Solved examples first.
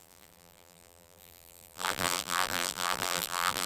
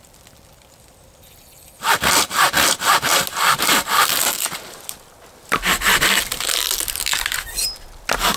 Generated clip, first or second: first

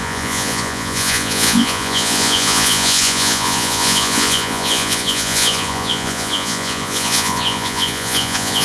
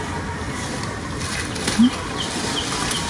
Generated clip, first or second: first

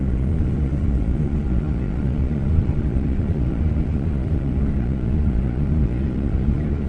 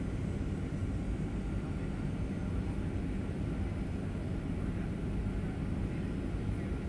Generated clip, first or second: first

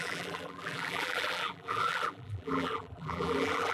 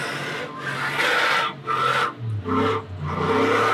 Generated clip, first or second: first